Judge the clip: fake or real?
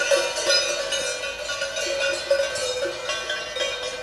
real